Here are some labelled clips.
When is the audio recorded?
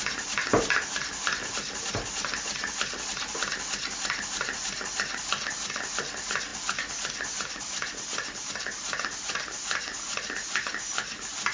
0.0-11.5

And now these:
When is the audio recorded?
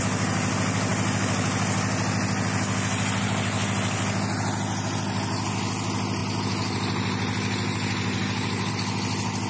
0.0-9.5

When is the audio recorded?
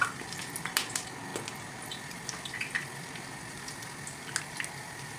0.0-5.2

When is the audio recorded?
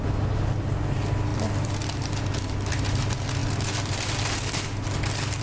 0.0-5.4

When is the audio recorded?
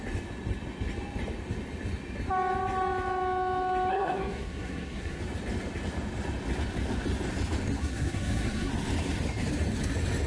0.0-3.9; 5.2-7.8; 8.7-10.3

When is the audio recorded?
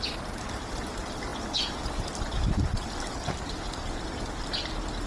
0.0-5.1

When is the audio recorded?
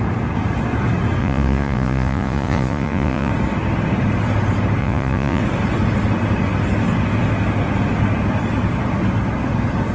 0.0-1.2; 3.3-4.8; 5.4-9.9